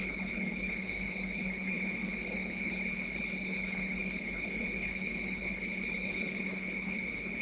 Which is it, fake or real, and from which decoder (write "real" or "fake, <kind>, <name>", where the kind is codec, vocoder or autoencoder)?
fake, codec, HILCodec